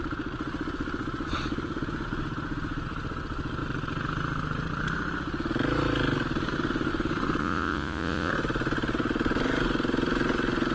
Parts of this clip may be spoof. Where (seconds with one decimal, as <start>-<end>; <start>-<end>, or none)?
7.4-8.3